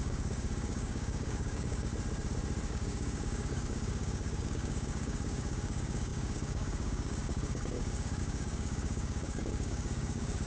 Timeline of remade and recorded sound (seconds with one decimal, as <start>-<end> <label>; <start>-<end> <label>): 0.0-1.9 remade; 1.9-2.7 recorded; 2.7-10.5 remade

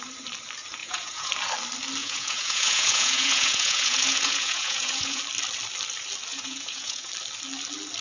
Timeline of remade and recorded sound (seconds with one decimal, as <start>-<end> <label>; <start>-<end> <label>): 0.0-0.8 recorded; 0.8-1.3 remade; 1.3-2.0 recorded; 2.0-5.2 remade; 5.2-6.3 recorded; 6.3-7.1 remade; 7.1-8.0 recorded

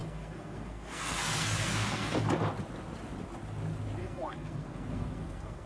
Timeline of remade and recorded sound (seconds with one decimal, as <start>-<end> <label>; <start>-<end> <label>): 0.0-2.2 remade; 2.2-4.0 recorded; 4.0-5.7 remade

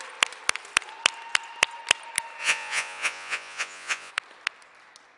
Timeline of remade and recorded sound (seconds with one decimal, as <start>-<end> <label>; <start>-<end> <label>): 0.0-2.4 recorded; 2.4-4.1 remade; 4.1-5.2 recorded

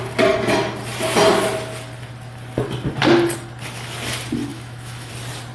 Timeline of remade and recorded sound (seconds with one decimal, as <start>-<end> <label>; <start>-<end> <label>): 0.0-4.5 recorded; 4.5-5.1 remade; 5.1-5.5 recorded